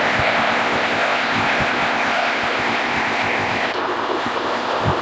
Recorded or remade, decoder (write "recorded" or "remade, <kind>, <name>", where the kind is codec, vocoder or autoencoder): remade, codec, ZipCodec